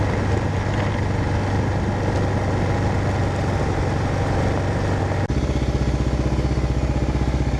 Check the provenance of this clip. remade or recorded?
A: recorded